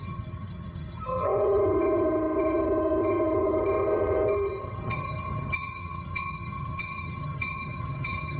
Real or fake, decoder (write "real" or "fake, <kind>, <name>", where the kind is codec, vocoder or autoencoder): fake, vocoder, HiFi-GAN